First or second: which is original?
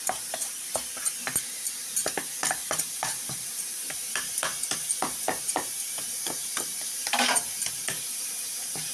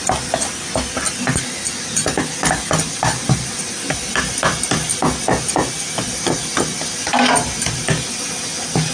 second